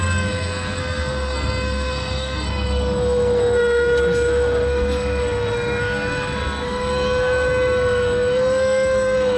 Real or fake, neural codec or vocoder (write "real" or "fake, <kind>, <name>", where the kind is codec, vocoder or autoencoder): fake, codec, SNAC